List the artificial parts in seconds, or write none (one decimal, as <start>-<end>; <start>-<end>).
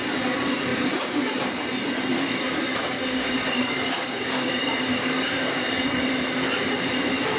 0.7-1.4; 2.1-6.0